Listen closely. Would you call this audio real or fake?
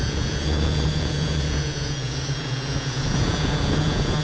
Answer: fake